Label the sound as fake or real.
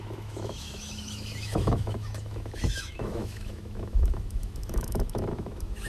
fake